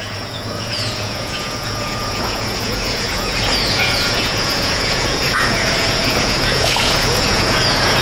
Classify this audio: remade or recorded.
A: remade